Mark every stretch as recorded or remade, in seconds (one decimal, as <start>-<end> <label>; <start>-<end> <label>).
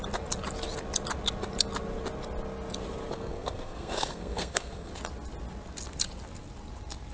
0.0-3.1 recorded; 3.1-4.9 remade; 4.9-7.1 recorded